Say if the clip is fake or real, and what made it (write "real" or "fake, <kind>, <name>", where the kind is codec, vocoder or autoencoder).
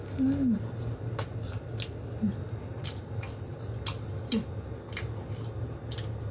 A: real